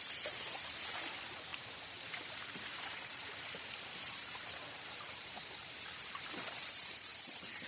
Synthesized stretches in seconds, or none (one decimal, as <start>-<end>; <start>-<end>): 1.5-5.8